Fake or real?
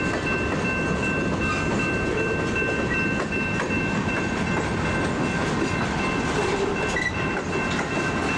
real